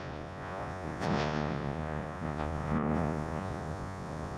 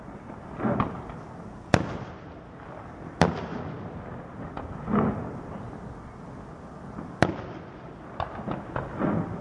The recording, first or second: second